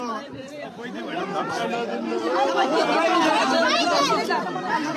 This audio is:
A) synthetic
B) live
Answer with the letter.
A